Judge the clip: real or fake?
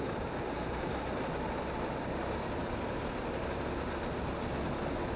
real